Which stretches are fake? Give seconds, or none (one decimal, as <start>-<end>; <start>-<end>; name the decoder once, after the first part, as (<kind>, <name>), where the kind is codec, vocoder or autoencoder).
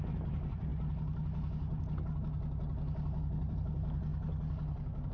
0.0-0.7 (vocoder, BigVGAN v2); 3.5-4.1